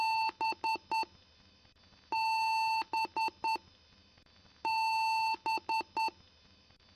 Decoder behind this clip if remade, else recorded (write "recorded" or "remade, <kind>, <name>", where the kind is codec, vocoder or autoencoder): recorded